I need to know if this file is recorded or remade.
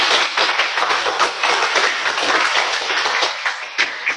recorded